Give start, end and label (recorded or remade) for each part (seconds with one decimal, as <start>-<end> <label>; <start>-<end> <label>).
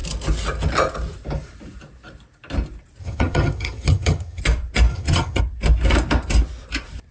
0.0-3.0 recorded; 3.0-4.4 remade; 4.4-4.9 recorded; 4.9-5.4 remade; 5.4-7.1 recorded